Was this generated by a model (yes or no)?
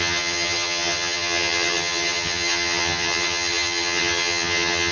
yes